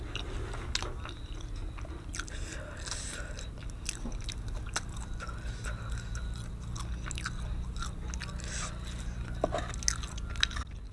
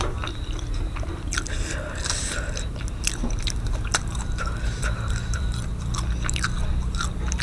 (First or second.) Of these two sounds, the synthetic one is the second